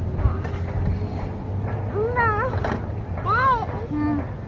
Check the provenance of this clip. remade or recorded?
recorded